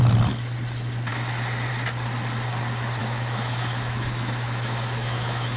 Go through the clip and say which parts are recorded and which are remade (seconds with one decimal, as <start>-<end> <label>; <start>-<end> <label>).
0.0-3.0 recorded; 3.0-5.6 remade